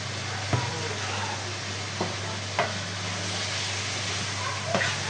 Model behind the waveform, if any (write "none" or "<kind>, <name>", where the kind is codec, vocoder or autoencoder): none